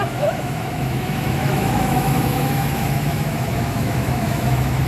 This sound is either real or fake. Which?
fake